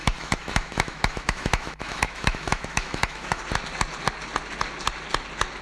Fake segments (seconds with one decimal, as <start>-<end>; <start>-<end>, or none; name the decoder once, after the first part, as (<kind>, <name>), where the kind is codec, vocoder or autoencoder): 0.0-3.4 (autoencoder, DAC-VAE)